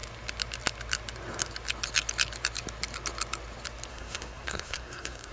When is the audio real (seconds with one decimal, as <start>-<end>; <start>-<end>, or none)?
0.0-3.9